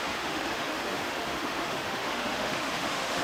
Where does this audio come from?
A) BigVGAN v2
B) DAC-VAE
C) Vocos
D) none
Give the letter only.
B